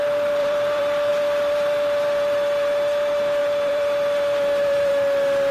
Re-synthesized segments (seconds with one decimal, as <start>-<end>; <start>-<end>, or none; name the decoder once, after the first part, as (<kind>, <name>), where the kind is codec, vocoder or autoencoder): 0.4-1.1 (vocoder, BigVGAN v2); 3.4-4.9